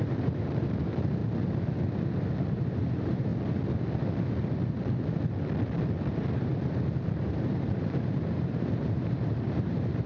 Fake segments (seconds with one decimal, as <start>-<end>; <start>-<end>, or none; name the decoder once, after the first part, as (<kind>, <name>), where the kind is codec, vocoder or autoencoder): 0.0-1.2 (vocoder, BigVGAN v2); 2.5-3.3; 6.1-6.5; 7.2-10.1